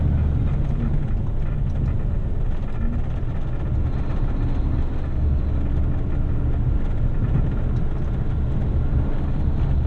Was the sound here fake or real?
real